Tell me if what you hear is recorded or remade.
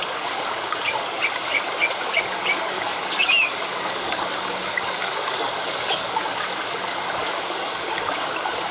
remade